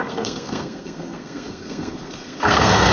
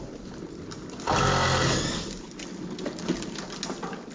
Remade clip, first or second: first